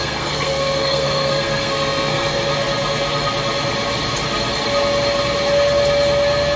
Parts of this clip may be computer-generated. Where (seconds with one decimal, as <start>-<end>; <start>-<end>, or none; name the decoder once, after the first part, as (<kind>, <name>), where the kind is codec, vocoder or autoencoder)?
0.0-2.5 (codec, SNAC)